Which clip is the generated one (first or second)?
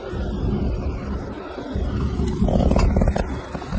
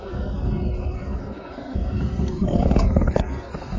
second